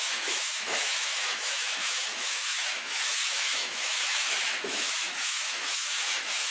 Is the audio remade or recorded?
remade